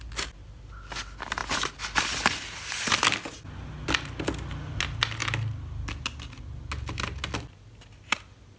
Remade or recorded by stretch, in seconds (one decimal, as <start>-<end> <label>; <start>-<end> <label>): 0.0-8.6 recorded